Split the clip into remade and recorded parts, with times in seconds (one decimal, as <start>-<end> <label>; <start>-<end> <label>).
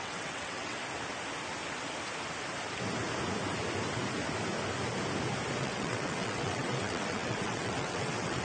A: 0.0-0.8 remade; 0.8-5.6 recorded; 5.6-8.4 remade